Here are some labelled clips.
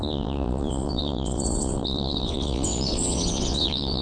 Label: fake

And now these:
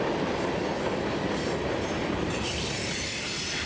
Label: real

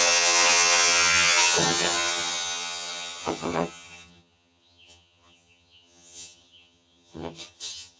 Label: fake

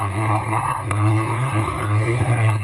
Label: fake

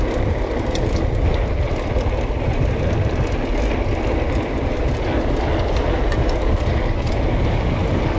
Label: real